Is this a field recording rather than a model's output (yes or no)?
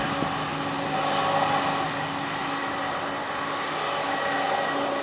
yes